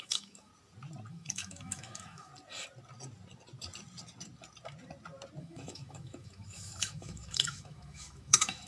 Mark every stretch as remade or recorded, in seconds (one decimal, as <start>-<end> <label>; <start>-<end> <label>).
0.0-0.5 remade; 0.5-1.1 recorded; 1.1-2.3 remade; 2.3-5.4 recorded; 5.4-8.7 remade